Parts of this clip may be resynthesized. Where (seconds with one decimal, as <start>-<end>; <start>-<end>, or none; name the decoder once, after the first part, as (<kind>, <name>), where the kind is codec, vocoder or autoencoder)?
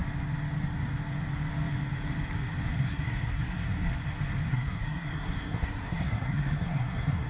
2.8-3.9 (codec, SNAC); 4.5-7.3